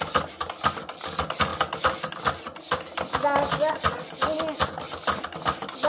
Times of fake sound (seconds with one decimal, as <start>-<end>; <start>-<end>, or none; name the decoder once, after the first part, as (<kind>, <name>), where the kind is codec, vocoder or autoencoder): none